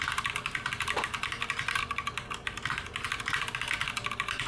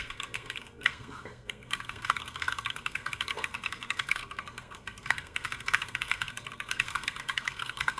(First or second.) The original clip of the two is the first